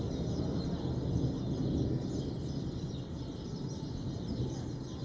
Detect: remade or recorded recorded